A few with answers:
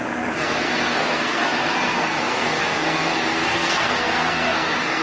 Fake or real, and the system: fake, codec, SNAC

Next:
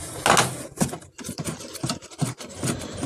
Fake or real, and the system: real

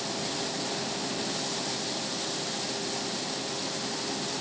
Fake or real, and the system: real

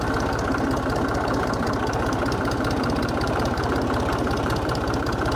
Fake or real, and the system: fake, vocoder, BigVGAN v2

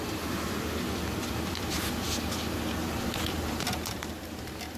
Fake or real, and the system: fake, vocoder, BigVGAN v2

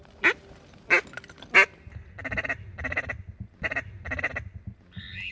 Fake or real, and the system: real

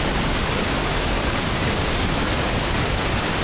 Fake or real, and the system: fake, codec, DAC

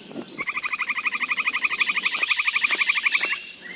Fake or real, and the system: real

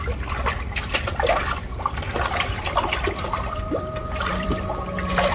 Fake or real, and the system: fake, vocoder, BigVGAN v2